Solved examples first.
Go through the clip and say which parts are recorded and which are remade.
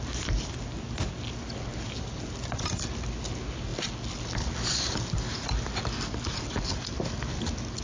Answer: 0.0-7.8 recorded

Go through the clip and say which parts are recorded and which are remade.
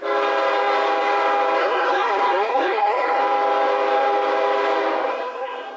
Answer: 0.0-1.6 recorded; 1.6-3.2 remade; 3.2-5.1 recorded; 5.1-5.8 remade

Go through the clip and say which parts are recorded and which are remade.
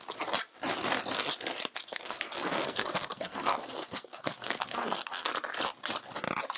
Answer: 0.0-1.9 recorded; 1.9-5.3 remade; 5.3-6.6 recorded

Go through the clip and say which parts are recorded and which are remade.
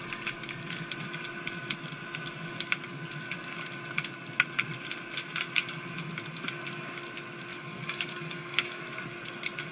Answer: 0.0-7.5 recorded; 7.5-8.8 remade; 8.8-9.7 recorded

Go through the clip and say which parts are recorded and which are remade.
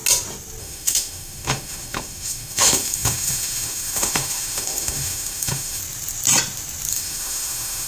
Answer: 0.0-0.6 recorded; 0.6-5.8 remade; 5.8-6.9 recorded; 6.9-7.9 remade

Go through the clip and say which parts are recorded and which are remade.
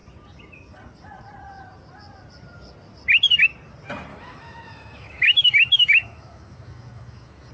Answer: 0.0-4.1 recorded; 4.1-7.5 remade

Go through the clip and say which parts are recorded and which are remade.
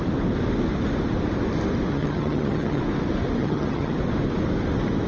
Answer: 0.0-1.9 recorded; 1.9-2.8 remade; 2.8-3.4 recorded; 3.4-4.0 remade; 4.0-5.1 recorded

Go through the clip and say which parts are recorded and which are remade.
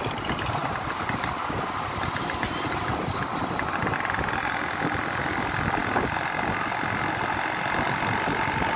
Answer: 0.0-8.8 recorded